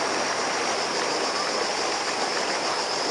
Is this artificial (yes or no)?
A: no